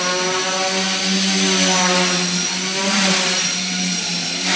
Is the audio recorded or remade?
recorded